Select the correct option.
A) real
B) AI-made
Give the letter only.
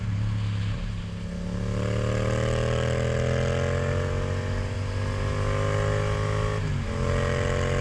A